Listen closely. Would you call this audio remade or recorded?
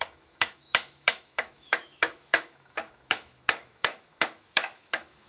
remade